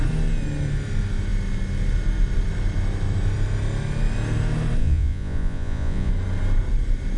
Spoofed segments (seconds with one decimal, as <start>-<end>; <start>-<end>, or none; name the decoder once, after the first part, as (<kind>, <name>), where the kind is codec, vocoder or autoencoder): 4.8-6.1 (vocoder, Vocos)